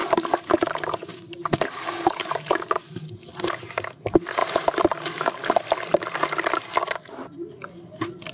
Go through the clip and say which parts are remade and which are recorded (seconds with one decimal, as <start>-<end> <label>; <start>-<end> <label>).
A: 0.0-0.6 remade; 0.6-1.0 recorded; 1.0-3.0 remade; 3.0-8.3 recorded